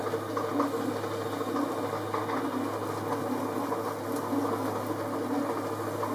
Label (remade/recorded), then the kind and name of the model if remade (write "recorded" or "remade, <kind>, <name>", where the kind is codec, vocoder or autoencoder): recorded